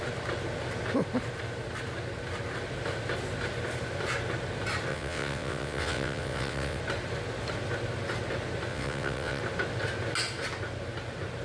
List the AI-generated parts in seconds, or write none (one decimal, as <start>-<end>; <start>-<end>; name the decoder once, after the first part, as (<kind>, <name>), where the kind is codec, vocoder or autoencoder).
4.9-6.8 (vocoder, WaveNeXt); 8.7-9.4